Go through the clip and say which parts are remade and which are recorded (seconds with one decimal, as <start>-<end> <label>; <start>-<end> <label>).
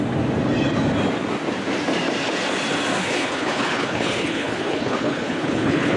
0.0-3.0 recorded; 3.0-6.0 remade